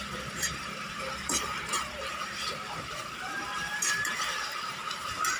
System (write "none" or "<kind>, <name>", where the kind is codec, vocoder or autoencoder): vocoder, BigVGAN v2